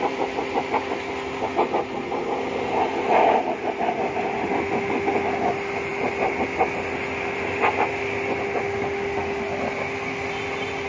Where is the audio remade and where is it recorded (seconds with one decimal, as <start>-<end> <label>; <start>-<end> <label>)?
0.0-10.9 recorded